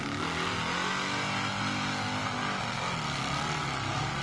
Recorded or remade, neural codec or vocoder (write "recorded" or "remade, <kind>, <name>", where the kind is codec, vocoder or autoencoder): recorded